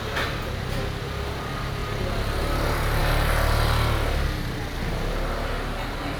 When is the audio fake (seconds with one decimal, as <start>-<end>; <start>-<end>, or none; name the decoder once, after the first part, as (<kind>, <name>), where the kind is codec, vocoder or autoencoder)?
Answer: none